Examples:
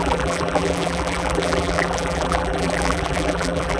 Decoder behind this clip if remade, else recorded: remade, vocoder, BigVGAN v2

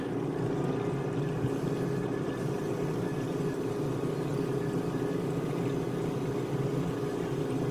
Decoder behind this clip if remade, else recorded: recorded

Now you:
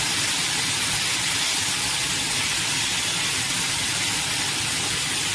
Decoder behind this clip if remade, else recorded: remade, vocoder, BigVGAN v2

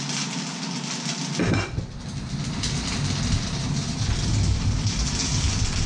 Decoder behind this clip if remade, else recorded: recorded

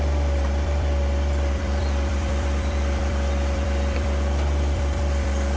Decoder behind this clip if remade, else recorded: remade, vocoder, BigVGAN v2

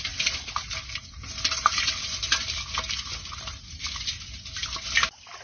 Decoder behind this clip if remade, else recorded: recorded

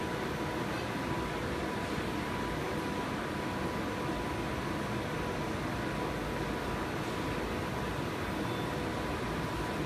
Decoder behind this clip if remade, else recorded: recorded